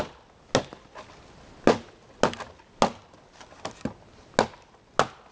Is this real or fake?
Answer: real